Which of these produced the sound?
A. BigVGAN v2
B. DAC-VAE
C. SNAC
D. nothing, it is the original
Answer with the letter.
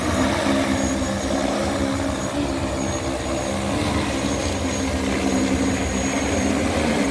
D